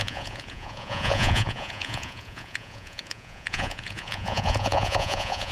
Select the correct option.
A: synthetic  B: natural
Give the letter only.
A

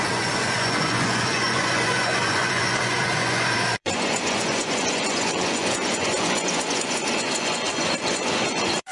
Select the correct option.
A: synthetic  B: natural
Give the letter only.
A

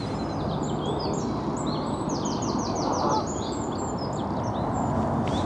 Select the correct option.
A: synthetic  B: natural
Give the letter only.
B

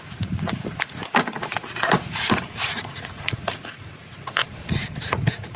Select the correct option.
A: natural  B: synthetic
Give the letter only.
B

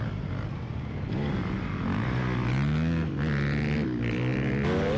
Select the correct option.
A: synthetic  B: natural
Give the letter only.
B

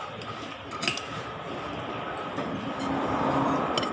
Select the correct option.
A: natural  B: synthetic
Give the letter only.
A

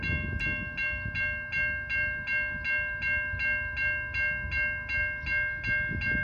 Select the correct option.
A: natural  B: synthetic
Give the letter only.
A